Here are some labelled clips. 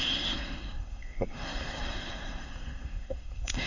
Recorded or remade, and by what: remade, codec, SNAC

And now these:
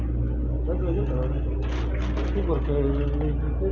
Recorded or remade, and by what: recorded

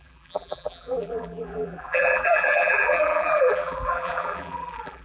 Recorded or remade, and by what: remade, vocoder, BigVGAN v2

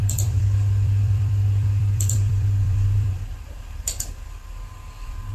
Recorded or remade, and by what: remade, vocoder, BigVGAN v2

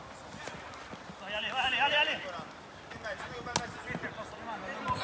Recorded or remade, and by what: recorded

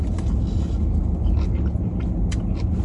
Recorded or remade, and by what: recorded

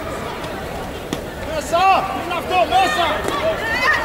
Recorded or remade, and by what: remade, vocoder, BigVGAN v2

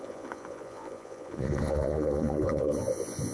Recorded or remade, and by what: remade, vocoder, Vocos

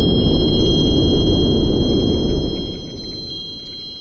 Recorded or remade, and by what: recorded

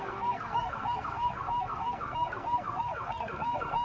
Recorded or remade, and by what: remade, codec, SNAC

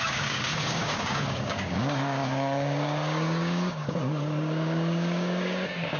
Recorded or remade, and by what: remade, codec, DAC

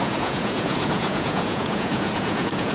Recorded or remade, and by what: remade, vocoder, Vocos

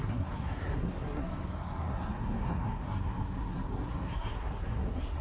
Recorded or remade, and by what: remade, codec, SNAC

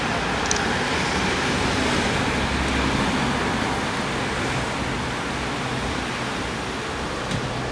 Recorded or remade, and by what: recorded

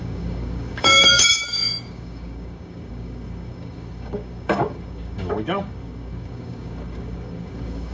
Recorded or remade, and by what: remade, codec, DAC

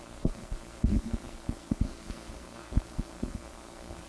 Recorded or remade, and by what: remade, codec, SNAC